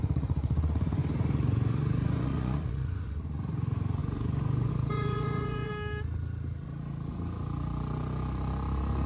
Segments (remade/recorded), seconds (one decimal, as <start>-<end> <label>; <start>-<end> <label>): 0.0-5.7 remade; 5.7-9.1 recorded